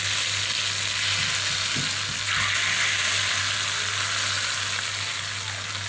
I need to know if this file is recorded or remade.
recorded